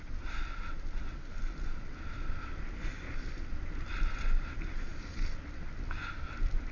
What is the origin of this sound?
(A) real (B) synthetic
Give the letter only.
A